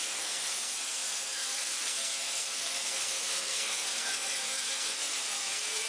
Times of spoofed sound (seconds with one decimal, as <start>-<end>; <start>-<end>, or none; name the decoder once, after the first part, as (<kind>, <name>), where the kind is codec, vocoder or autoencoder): 0.0-5.9 (codec, SNAC)